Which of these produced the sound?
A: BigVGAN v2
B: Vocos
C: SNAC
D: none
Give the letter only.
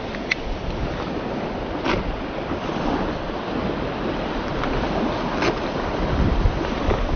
D